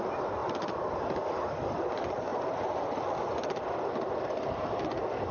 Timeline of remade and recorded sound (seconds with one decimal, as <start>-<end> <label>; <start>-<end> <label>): 0.0-5.3 recorded